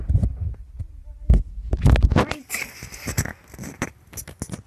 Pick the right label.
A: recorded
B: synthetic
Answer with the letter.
A